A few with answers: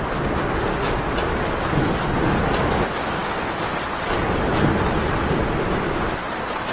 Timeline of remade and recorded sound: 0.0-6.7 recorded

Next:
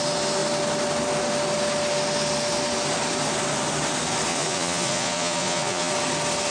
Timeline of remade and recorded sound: 0.0-4.3 recorded; 4.3-5.9 remade; 5.9-6.5 recorded

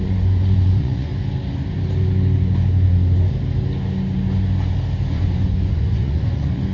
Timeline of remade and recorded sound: 0.0-1.1 remade; 1.1-5.1 recorded; 5.1-6.7 remade

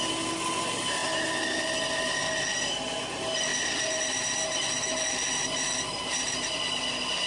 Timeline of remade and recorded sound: 0.0-7.3 recorded

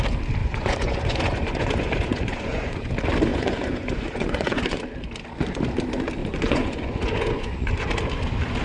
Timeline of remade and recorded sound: 0.0-0.4 recorded; 0.4-2.9 remade; 2.9-3.3 recorded; 3.3-4.8 remade; 4.8-6.2 recorded; 6.2-7.9 remade; 7.9-8.6 recorded